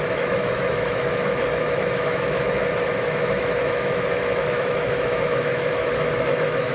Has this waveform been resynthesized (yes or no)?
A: yes